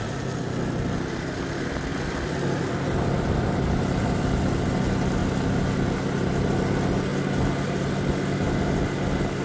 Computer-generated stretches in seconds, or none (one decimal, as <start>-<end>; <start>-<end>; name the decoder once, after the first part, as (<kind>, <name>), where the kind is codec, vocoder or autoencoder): 1.9-4.6 (vocoder, BigVGAN v2)